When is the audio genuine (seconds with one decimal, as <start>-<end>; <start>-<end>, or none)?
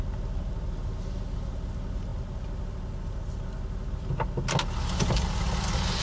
0.0-6.0